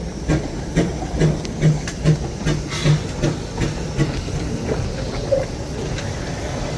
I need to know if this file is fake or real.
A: real